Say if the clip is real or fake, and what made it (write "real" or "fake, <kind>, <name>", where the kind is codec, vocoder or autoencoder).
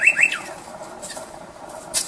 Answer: fake, vocoder, BigVGAN v2